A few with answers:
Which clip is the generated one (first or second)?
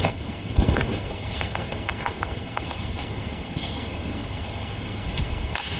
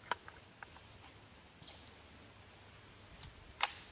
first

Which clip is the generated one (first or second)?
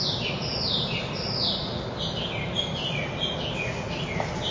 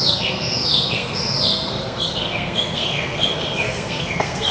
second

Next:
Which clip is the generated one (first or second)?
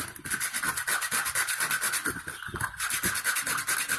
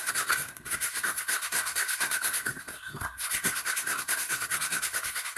second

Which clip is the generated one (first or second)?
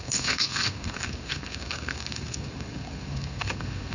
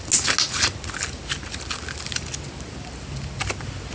first